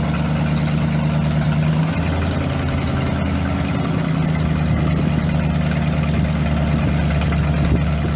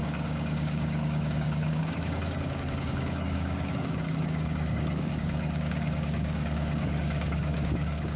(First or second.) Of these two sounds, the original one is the first